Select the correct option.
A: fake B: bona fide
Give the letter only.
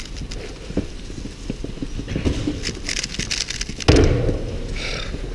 B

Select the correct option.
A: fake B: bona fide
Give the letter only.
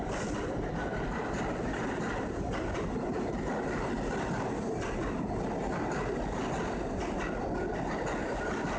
B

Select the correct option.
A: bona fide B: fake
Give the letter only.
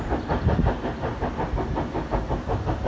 A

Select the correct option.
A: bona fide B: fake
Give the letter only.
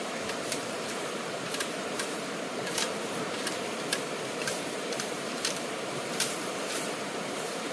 B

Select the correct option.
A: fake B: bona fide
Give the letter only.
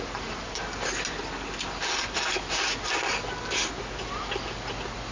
B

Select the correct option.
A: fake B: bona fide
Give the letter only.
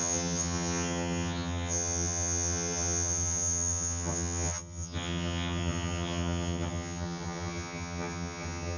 A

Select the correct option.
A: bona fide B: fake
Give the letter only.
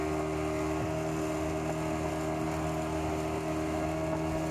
A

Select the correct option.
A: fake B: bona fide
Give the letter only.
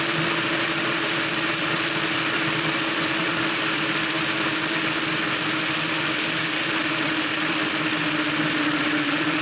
A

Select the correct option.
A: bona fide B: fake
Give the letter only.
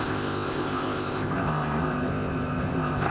B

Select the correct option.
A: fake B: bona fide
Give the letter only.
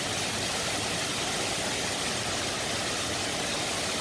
B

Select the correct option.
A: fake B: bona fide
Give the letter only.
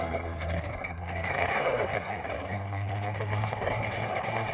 A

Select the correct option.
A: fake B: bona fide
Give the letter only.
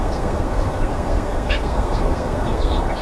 A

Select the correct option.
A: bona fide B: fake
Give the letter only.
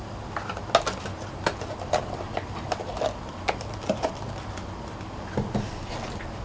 A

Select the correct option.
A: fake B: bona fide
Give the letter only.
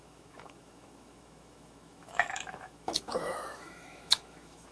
A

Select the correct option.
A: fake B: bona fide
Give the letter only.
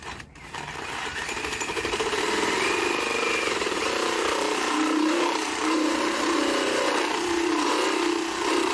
A